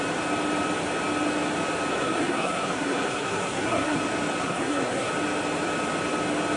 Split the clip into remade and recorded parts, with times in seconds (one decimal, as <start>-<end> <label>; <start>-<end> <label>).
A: 0.0-1.9 recorded; 1.9-4.0 remade; 4.0-4.4 recorded; 4.4-5.1 remade; 5.1-6.6 recorded